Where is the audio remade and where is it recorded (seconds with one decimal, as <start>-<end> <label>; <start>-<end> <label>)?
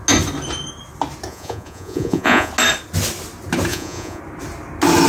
0.0-1.3 recorded; 1.3-2.5 remade; 2.5-3.7 recorded; 3.7-4.2 remade; 4.2-5.1 recorded